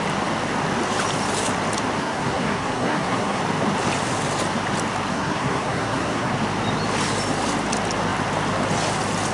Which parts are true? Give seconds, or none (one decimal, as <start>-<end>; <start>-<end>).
0.0-2.0; 3.4-5.1; 6.3-9.3